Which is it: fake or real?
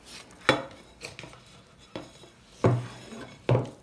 real